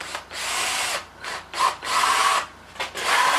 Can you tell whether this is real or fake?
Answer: real